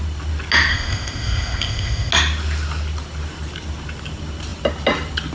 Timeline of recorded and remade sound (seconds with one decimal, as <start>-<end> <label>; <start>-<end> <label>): 0.0-0.7 recorded; 0.7-2.1 remade; 2.1-5.3 recorded